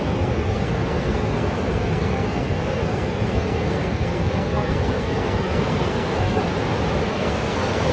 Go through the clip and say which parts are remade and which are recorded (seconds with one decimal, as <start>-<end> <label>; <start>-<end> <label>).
0.0-6.4 remade; 6.4-7.1 recorded; 7.1-7.9 remade